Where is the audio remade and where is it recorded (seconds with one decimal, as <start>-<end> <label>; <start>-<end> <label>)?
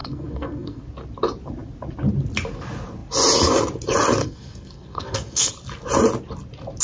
0.0-0.8 remade; 0.8-4.2 recorded; 4.2-5.5 remade; 5.5-6.8 recorded